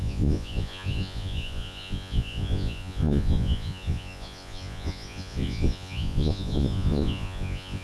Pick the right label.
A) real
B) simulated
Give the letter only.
B